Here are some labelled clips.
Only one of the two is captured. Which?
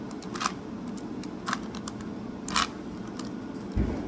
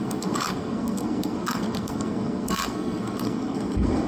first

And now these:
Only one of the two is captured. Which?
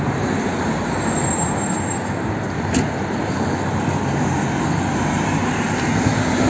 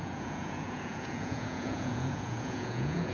first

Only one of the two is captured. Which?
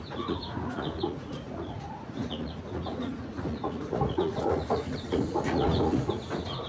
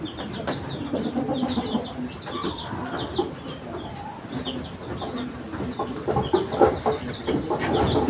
second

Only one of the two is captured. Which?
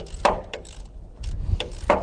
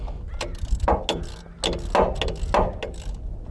second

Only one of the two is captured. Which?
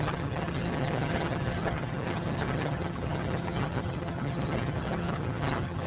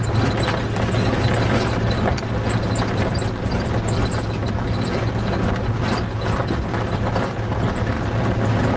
second